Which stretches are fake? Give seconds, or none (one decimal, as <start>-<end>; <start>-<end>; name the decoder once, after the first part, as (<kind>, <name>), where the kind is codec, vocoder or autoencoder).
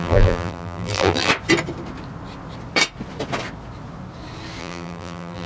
0.0-1.3 (vocoder, BigVGAN v2); 4.6-5.5